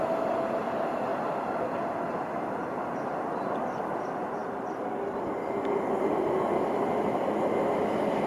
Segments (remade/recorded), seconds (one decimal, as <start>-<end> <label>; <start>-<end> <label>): 0.0-8.3 recorded